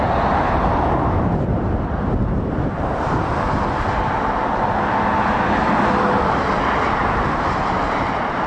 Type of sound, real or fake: real